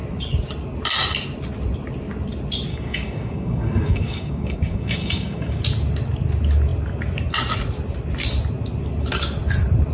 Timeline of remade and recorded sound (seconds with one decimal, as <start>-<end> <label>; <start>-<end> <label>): 0.0-2.7 recorded; 2.7-5.6 remade; 5.6-9.9 recorded